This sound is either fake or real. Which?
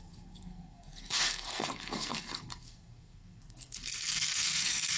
fake